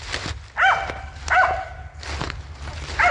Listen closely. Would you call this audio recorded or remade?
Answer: recorded